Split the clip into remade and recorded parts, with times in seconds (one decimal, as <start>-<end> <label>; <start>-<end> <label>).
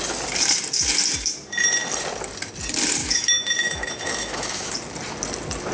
0.0-3.0 recorded; 3.0-4.7 remade; 4.7-5.7 recorded